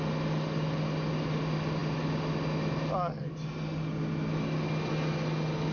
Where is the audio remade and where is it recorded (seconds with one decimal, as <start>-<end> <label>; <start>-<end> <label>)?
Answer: 0.0-5.7 recorded